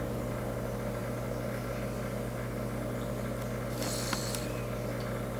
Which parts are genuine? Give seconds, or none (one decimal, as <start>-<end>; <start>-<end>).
0.0-5.4